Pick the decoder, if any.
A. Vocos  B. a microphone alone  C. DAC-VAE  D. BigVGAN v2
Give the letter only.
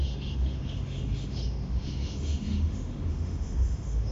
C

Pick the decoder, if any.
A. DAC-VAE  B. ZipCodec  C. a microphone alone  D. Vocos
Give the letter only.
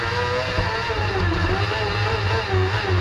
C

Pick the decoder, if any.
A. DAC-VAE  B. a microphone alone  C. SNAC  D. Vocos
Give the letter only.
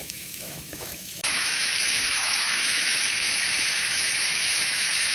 A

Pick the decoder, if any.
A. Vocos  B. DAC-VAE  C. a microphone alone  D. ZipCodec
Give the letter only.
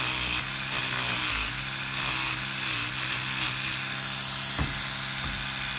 C